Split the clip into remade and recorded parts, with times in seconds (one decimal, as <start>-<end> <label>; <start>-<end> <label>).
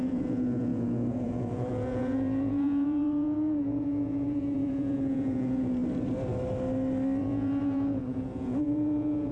0.0-5.8 remade; 5.8-7.2 recorded; 7.2-9.3 remade